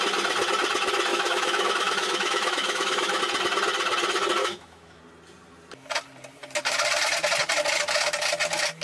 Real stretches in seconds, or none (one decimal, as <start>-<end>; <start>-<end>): 0.0-1.1; 3.2-4.4; 5.0-8.8